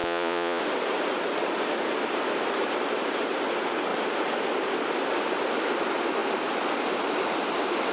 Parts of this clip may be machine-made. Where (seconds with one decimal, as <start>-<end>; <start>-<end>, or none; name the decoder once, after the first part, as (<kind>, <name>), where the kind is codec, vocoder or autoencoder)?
0.0-0.6 (vocoder, Vocos)